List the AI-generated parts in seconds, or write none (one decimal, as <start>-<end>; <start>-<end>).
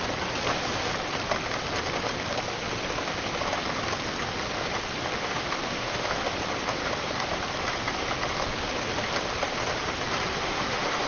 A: 5.2-6.3; 10.3-11.1